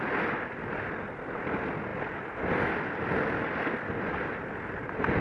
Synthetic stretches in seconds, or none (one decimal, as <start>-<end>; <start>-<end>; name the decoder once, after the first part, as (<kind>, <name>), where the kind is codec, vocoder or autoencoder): none